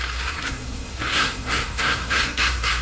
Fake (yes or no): yes